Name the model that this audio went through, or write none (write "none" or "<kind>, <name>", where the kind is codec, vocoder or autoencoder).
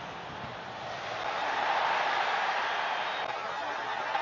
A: none